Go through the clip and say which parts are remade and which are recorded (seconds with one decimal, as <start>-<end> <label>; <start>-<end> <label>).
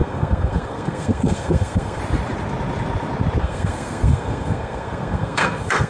0.0-2.0 remade; 2.0-3.4 recorded; 3.4-5.9 remade